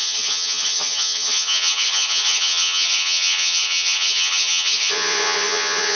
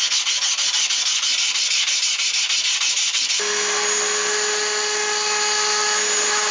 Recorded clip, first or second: second